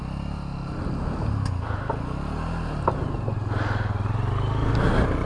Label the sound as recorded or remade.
recorded